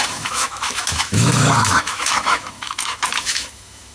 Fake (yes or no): yes